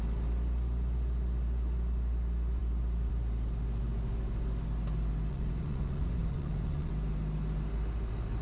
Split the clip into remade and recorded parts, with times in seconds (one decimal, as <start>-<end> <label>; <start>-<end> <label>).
0.0-5.3 recorded; 5.3-6.9 remade; 6.9-8.4 recorded